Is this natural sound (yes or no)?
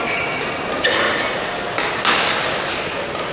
yes